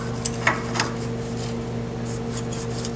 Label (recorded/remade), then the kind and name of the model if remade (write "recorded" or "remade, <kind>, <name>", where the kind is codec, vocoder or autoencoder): recorded